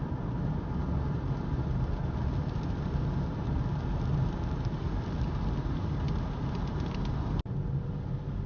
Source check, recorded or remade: recorded